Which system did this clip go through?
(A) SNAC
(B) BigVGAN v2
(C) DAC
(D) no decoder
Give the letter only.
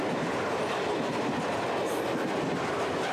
D